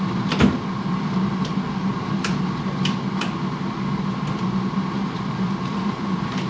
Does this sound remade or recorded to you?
remade